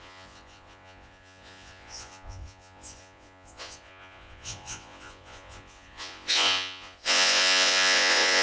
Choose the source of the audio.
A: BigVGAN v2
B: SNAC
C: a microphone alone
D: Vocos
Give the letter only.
D